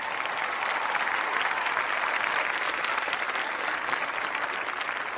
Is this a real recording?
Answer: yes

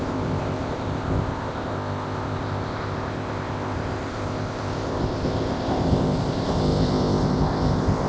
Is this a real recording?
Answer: no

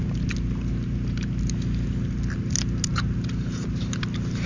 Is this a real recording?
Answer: yes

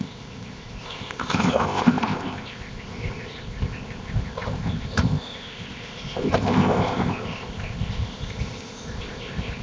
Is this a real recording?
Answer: no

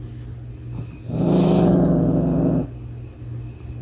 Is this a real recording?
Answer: yes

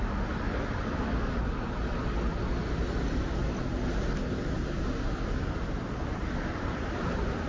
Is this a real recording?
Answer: yes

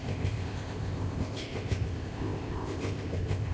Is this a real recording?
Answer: no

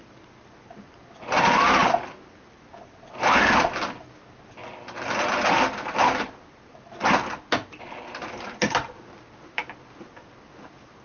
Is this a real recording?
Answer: yes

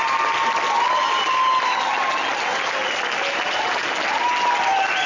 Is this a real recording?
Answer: yes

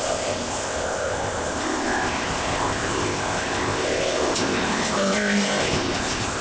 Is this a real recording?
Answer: no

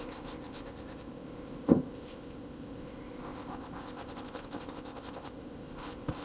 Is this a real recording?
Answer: no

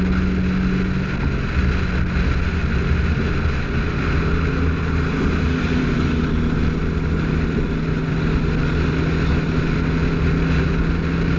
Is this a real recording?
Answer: yes